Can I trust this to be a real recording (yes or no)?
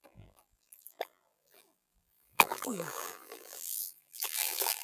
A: no